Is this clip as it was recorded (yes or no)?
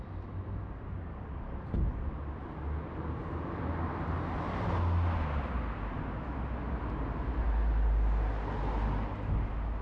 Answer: yes